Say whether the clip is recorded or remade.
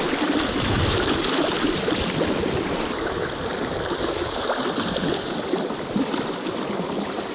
remade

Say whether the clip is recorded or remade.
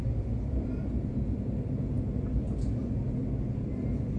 recorded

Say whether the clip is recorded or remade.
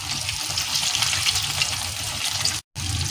recorded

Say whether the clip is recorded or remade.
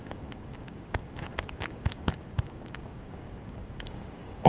remade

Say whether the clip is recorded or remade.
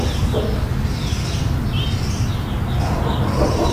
recorded